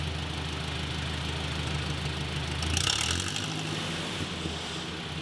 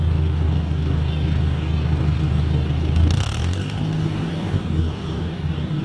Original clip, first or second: first